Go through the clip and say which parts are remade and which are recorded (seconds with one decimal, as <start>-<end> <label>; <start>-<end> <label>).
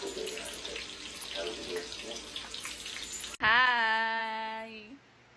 0.0-5.4 recorded